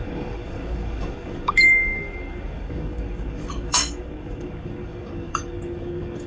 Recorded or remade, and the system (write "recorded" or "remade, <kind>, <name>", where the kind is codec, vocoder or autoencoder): remade, codec, DAC